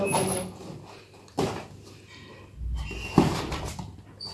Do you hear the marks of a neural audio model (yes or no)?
no